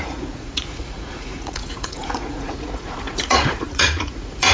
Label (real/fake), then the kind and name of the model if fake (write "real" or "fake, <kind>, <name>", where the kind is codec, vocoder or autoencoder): fake, vocoder, Vocos